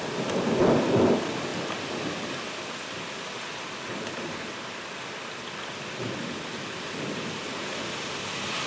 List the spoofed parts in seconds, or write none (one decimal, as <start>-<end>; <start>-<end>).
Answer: none